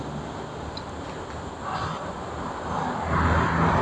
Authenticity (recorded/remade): recorded